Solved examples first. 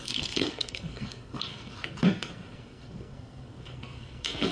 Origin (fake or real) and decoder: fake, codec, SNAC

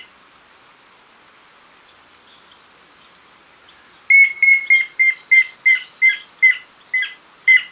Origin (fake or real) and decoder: real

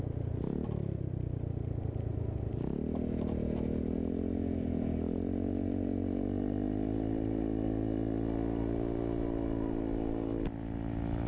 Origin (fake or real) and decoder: real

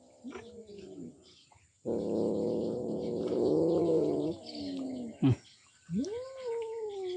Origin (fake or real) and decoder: real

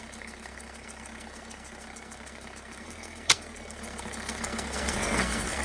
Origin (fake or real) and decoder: fake, codec, SNAC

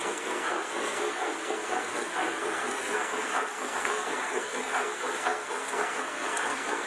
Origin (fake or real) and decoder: fake, codec, SNAC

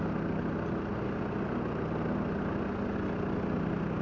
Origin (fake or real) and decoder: real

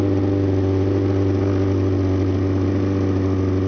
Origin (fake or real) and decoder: real